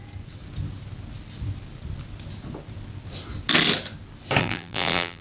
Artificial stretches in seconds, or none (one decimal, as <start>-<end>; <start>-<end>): 4.4-5.2